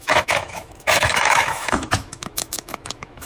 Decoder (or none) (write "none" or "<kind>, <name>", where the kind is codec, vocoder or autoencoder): autoencoder, DAC-VAE